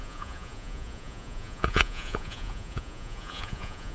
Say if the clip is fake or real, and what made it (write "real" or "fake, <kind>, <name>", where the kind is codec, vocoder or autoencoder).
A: fake, vocoder, Vocos